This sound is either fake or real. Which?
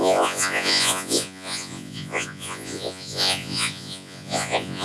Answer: fake